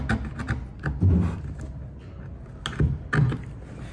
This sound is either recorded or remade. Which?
recorded